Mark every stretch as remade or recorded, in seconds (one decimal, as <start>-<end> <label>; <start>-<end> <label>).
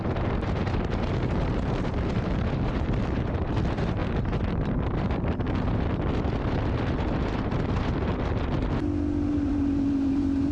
0.0-4.0 remade; 4.0-7.2 recorded; 7.2-8.1 remade; 8.1-9.3 recorded; 9.3-10.5 remade